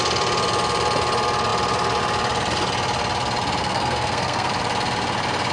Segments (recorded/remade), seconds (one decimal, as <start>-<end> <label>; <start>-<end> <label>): 0.0-3.6 recorded; 3.6-4.5 remade; 4.5-5.5 recorded